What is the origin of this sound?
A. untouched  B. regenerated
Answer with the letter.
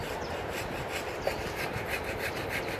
A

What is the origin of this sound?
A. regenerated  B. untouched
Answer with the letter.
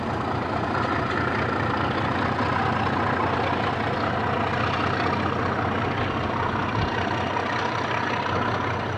B